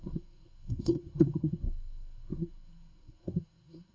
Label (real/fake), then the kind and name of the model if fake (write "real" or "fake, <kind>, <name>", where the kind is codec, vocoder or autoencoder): fake, codec, SNAC